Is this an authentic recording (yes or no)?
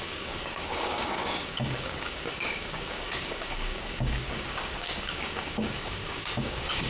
no